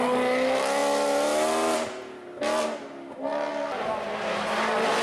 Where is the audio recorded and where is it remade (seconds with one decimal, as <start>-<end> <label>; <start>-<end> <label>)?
0.0-5.0 recorded